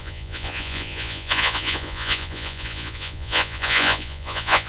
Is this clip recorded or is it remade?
remade